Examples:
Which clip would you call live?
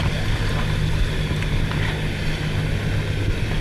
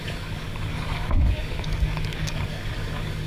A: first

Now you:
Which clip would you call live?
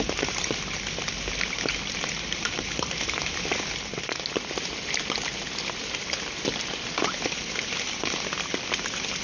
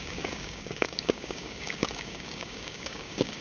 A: first